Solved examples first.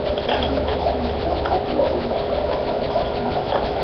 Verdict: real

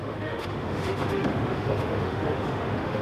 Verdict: fake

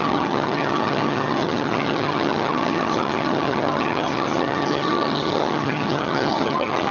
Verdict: fake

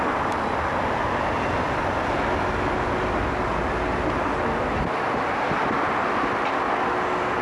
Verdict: real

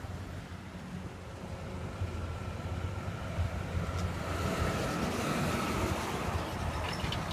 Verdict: real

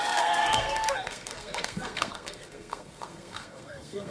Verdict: fake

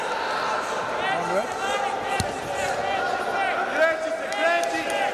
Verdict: real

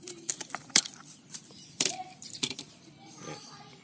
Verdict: fake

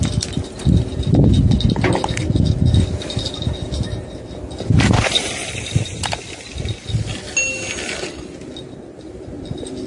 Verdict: real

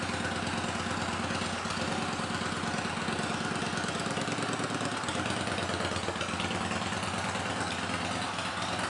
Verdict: real